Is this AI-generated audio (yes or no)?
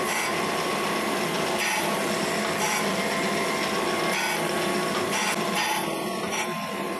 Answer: no